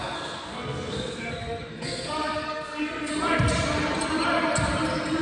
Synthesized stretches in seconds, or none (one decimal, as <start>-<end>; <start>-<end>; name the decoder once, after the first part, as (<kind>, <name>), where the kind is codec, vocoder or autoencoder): 0.0-3.1 (codec, SNAC)